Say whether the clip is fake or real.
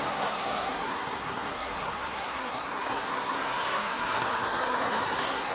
fake